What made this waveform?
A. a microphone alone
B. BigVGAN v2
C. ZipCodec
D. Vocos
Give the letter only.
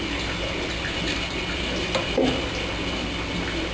A